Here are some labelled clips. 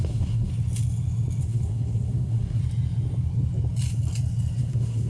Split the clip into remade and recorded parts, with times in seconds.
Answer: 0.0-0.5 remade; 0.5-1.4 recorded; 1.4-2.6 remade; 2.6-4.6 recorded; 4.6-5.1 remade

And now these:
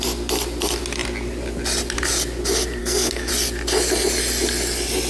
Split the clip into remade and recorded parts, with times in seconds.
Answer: 0.0-2.8 recorded; 2.8-3.3 remade; 3.3-5.1 recorded

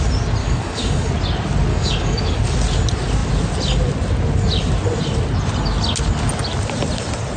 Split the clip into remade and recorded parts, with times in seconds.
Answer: 0.0-0.4 recorded; 0.4-1.1 remade; 1.1-1.7 recorded; 1.7-2.4 remade; 2.4-7.4 recorded

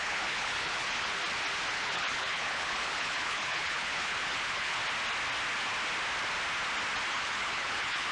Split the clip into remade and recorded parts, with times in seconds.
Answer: 0.0-1.2 remade; 1.2-1.7 recorded; 1.7-4.8 remade; 4.8-7.1 recorded; 7.1-8.1 remade

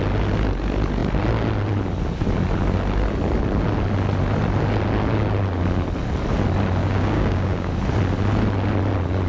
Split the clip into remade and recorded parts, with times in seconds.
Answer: 0.0-6.8 recorded; 6.8-7.7 remade; 7.7-9.3 recorded

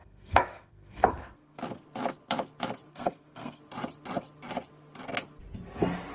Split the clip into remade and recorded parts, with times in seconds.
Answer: 0.0-1.6 remade; 1.6-2.9 recorded; 2.9-3.6 remade; 3.6-6.1 recorded